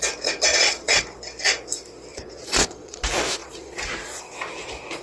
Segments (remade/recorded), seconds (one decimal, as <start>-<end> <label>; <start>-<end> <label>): 0.0-0.5 recorded; 0.5-1.0 remade; 1.0-2.1 recorded; 2.1-3.0 remade; 3.0-3.4 recorded; 3.4-4.2 remade; 4.2-5.0 recorded